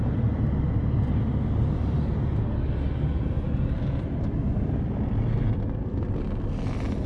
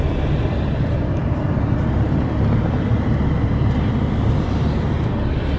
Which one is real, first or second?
first